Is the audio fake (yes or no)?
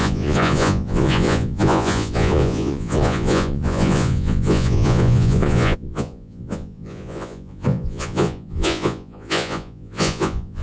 yes